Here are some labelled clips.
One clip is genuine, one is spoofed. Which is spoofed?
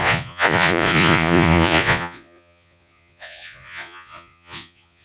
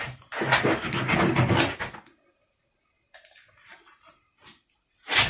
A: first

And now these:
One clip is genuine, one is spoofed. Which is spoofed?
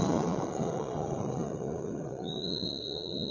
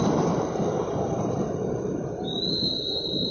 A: first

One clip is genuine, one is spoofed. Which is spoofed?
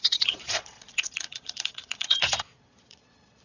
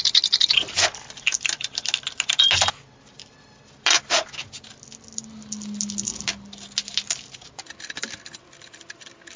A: first